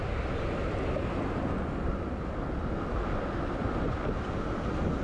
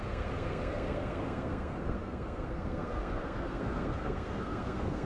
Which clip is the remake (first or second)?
second